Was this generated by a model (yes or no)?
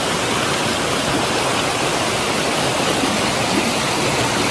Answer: no